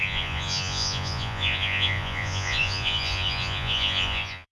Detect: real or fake fake